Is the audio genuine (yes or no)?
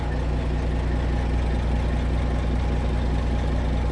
yes